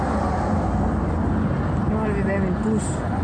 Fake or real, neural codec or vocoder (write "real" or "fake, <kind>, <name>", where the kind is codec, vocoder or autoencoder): real